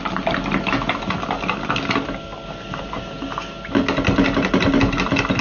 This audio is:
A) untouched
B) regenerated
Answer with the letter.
A